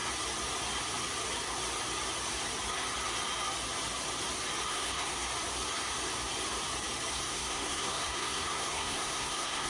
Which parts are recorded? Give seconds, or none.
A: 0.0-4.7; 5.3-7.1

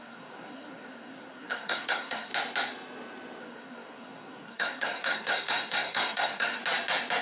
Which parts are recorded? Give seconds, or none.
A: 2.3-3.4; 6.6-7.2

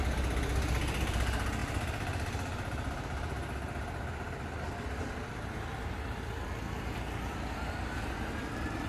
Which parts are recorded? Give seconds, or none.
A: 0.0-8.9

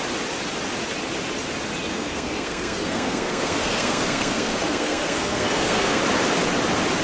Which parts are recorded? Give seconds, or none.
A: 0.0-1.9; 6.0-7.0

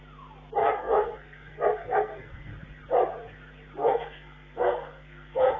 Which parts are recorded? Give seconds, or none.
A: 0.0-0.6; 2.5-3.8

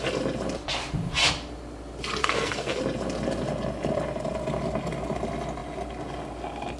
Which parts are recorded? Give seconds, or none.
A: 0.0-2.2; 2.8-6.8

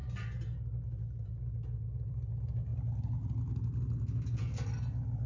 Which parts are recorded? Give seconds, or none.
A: 0.0-5.3

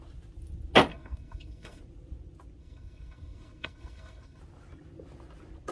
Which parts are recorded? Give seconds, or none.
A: 0.0-0.9; 1.8-2.6; 4.4-5.7